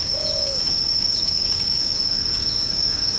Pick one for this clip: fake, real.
fake